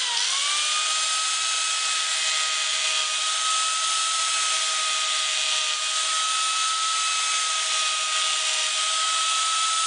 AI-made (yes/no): no